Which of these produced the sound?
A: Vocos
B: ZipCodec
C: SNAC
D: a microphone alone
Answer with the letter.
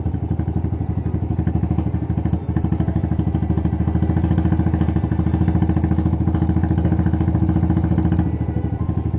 D